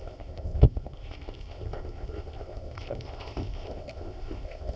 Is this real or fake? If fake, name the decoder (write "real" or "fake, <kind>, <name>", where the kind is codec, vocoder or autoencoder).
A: fake, codec, ZipCodec